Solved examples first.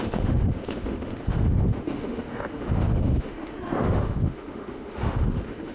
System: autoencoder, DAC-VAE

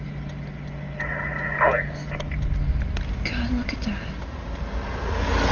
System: none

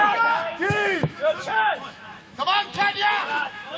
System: autoencoder, DAC-VAE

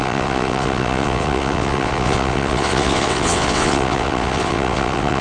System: vocoder, WaveNeXt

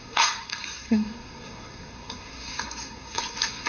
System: codec, SNAC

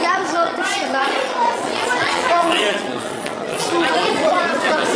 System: vocoder, Vocos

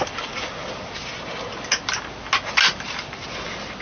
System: none